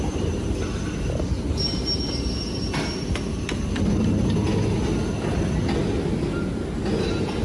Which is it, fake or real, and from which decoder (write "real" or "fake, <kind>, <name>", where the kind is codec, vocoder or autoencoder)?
real